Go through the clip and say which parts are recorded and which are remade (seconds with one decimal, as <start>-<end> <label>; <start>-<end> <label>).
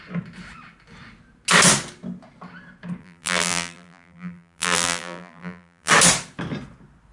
0.0-3.0 recorded; 3.0-5.9 remade; 5.9-7.1 recorded